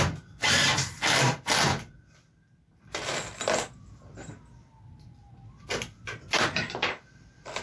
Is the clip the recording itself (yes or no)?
yes